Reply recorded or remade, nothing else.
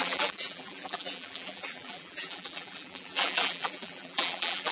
remade